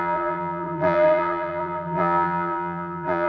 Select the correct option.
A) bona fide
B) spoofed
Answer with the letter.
B